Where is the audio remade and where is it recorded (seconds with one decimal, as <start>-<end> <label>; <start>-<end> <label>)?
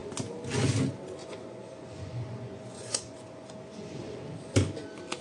0.0-1.2 recorded; 1.2-4.2 remade; 4.2-5.2 recorded